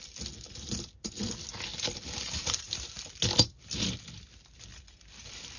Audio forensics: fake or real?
real